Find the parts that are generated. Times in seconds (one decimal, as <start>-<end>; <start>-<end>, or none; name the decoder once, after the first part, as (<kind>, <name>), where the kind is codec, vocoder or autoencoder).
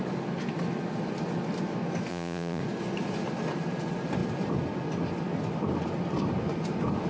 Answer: 2.1-2.6 (vocoder, Vocos)